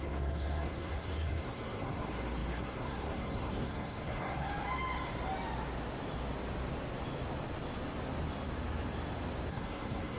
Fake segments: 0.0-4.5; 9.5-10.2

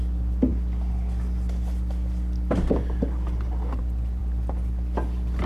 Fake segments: none